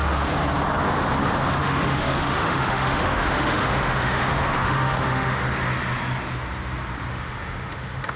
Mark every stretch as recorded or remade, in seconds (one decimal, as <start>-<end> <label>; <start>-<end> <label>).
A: 0.0-1.6 recorded; 1.6-5.4 remade; 5.4-7.1 recorded; 7.1-8.2 remade